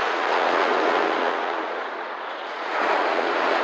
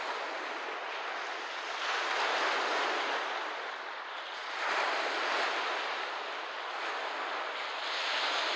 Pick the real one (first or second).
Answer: second